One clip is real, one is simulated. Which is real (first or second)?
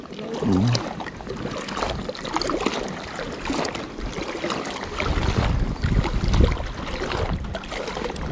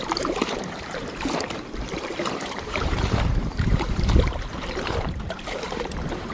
first